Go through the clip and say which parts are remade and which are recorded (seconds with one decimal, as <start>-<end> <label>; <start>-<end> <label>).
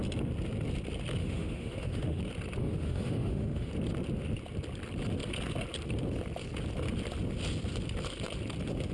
0.0-1.2 recorded; 1.2-2.2 remade; 2.2-2.6 recorded; 2.6-3.7 remade; 3.7-8.9 recorded